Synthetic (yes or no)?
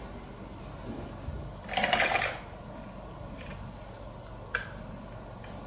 no